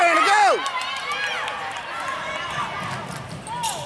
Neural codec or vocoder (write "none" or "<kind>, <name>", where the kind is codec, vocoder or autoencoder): none